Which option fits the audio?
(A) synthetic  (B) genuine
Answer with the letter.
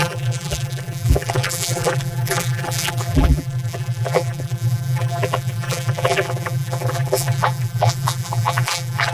A